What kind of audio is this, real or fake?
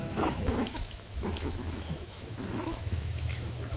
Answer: fake